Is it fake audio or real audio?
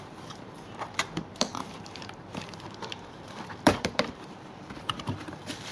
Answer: fake